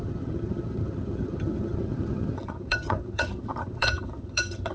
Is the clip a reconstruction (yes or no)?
yes